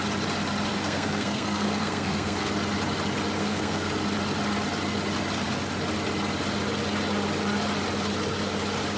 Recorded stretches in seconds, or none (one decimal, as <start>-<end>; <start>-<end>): 0.0-0.7; 2.5-3.4; 3.9-9.0